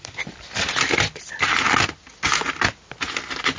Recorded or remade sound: recorded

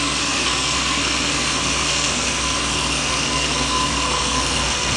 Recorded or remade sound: remade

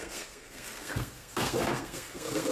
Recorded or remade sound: remade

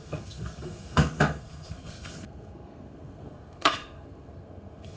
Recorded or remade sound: remade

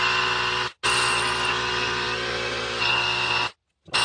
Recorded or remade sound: recorded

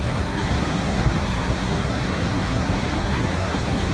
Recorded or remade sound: remade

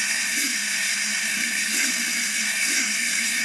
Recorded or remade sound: remade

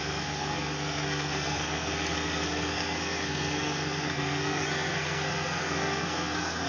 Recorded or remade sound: remade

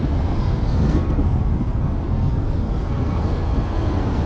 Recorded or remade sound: remade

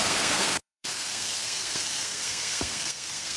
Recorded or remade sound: remade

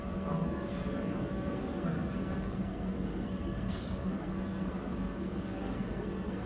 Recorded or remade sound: remade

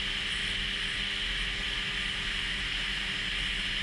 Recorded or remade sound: recorded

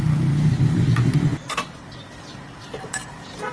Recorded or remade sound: recorded